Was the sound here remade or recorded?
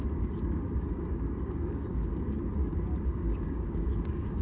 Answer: remade